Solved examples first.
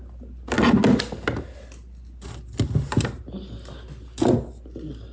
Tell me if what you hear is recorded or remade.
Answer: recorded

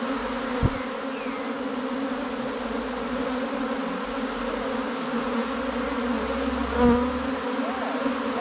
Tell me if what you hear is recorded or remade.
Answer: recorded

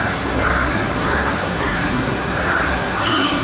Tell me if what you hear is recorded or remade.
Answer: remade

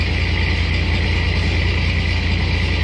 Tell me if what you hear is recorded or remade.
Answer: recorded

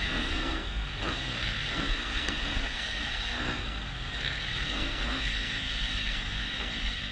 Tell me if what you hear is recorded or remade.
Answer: remade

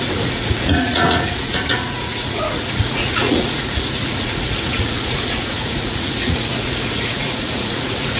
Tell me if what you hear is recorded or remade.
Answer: remade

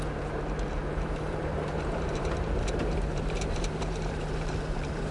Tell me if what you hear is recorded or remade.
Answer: remade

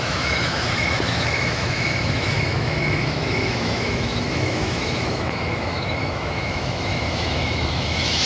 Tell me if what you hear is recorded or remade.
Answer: remade